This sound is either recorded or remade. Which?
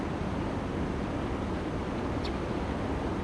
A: recorded